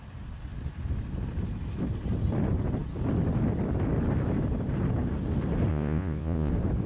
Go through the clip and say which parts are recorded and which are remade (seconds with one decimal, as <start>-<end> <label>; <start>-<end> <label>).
0.0-5.7 recorded; 5.7-6.5 remade; 6.5-6.9 recorded